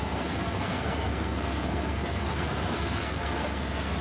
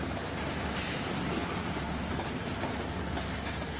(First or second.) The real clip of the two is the second